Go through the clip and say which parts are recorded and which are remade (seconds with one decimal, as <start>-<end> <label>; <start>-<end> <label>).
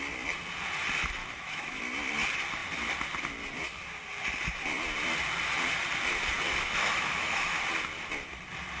0.0-1.2 recorded; 1.2-1.8 remade; 1.8-6.5 recorded; 6.5-7.6 remade; 7.6-8.8 recorded